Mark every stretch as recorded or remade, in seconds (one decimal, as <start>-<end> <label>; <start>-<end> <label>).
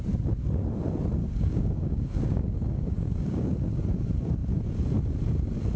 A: 0.0-1.2 recorded; 1.2-3.8 remade; 3.8-5.8 recorded